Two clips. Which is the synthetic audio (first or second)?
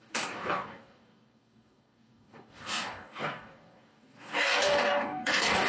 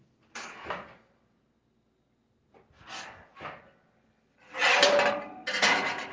first